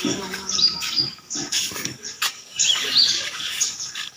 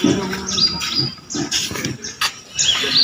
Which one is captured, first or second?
second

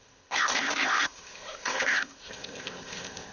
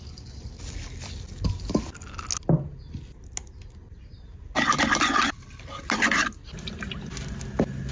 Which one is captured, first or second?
second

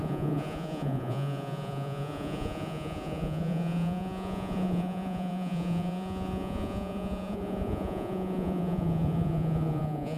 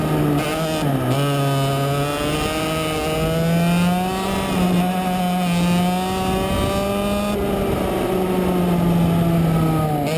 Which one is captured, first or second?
second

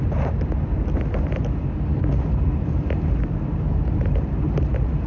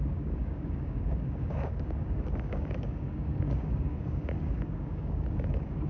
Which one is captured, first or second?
first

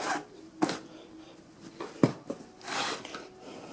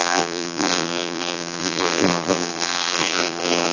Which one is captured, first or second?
first